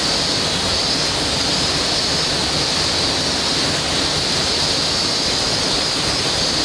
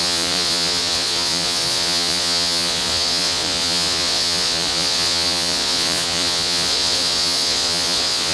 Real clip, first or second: first